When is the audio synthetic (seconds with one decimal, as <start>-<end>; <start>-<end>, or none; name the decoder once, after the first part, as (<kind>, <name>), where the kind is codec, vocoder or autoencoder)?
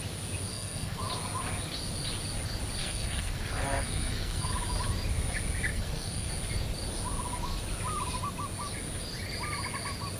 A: 0.5-1.0 (codec, SNAC); 2.8-4.5; 5.7-6.3